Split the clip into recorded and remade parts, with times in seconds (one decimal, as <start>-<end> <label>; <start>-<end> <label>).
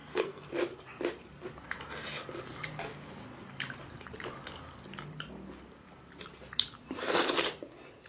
0.0-0.5 remade; 0.5-8.1 recorded